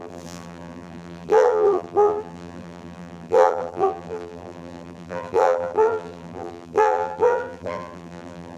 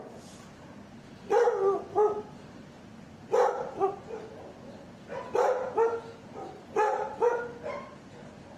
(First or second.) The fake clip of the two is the first